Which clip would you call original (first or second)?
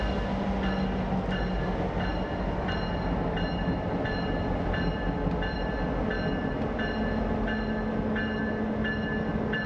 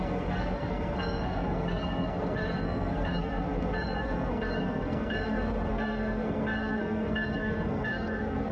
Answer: first